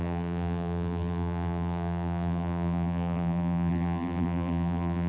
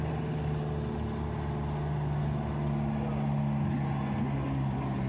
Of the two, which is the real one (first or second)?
second